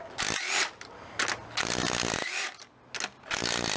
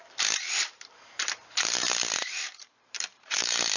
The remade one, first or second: second